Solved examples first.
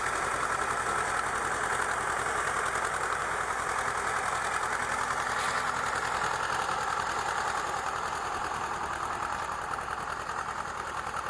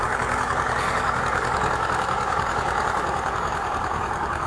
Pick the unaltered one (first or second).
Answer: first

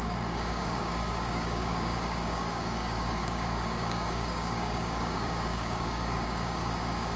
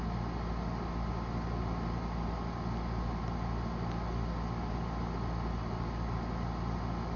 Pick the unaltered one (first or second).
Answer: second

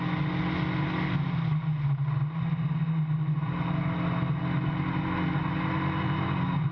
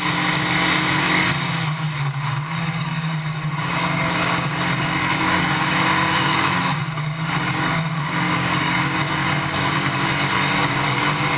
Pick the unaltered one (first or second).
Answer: first